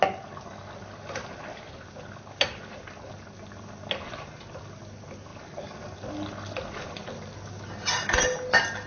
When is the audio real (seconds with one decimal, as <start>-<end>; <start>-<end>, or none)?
0.0-8.9